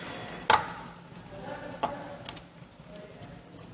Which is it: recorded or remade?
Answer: recorded